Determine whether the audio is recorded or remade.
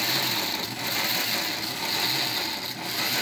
recorded